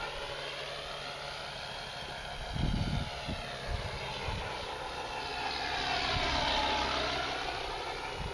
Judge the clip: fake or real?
real